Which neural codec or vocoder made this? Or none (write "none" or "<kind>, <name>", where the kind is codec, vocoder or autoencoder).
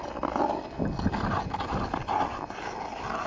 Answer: none